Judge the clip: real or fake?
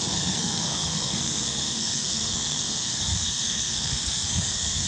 fake